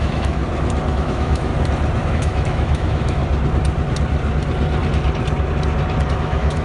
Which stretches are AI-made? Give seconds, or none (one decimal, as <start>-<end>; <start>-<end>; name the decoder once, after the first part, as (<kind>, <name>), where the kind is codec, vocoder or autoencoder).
0.0-0.4 (autoencoder, DAC-VAE); 0.9-1.5; 2.1-3.2; 6.1-6.6